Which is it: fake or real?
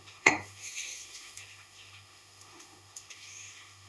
fake